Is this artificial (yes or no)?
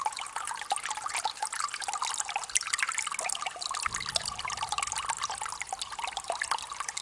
no